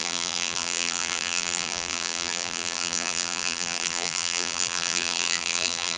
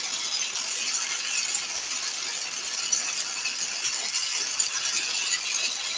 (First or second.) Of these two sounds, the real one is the second